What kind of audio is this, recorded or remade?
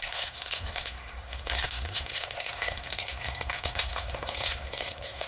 remade